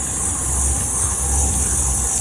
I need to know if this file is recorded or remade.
recorded